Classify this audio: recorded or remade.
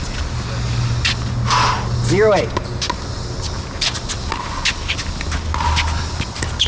recorded